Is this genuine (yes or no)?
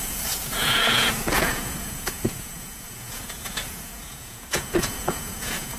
no